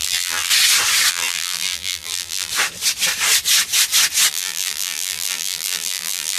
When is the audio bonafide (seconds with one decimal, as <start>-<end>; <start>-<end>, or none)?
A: 0.5-1.1; 2.5-4.3